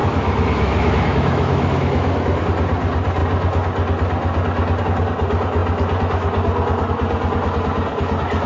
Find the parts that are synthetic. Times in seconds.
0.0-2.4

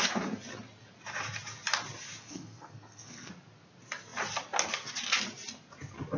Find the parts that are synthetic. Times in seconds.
2.2-3.3

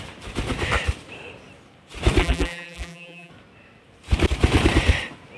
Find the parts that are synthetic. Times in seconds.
2.2-3.3

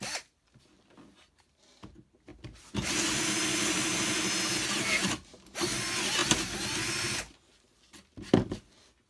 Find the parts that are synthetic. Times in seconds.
none